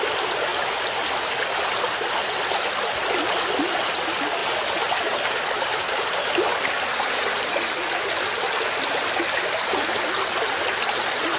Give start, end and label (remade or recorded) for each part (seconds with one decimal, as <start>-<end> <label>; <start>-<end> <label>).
0.0-4.4 recorded; 4.4-8.4 remade; 8.4-11.4 recorded